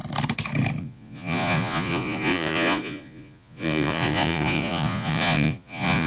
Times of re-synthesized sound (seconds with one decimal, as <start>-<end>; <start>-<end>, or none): 0.8-6.1